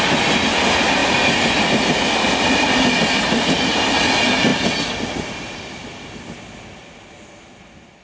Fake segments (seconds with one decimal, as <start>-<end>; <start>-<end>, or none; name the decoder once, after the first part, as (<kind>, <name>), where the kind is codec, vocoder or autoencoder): none